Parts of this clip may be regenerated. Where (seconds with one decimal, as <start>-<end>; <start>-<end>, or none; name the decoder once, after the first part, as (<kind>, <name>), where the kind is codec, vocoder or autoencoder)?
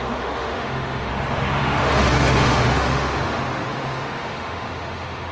0.0-1.1 (autoencoder, DAC-VAE); 1.6-5.3